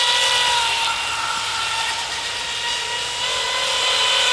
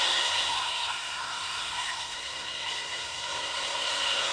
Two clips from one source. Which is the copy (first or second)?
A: second